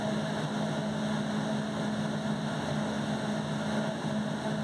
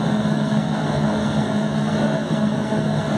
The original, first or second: first